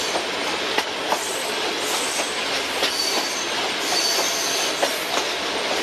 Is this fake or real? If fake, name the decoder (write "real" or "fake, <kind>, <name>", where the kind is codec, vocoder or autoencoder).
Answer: real